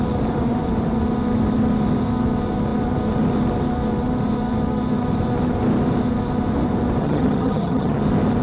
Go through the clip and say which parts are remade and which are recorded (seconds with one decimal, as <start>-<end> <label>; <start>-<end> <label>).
0.0-7.0 recorded; 7.0-8.0 remade; 8.0-8.4 recorded